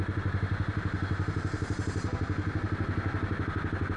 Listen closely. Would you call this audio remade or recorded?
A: recorded